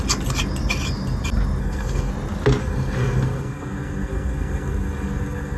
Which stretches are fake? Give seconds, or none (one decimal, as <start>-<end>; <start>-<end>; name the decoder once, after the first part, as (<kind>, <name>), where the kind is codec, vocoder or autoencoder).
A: 1.6-2.1 (codec, SNAC); 2.6-5.6